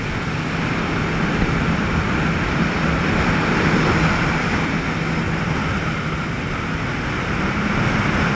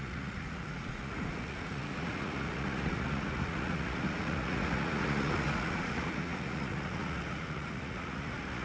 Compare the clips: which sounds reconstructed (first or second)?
second